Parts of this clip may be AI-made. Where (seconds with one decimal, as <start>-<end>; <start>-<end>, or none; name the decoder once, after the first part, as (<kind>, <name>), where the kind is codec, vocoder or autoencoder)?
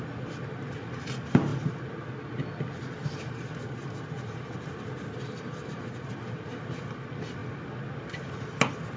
none